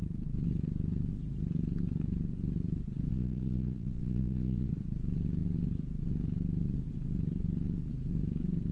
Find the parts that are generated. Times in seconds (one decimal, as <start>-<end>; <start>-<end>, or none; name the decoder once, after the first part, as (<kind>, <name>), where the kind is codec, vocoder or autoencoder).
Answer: 3.1-4.7 (vocoder, WaveNeXt)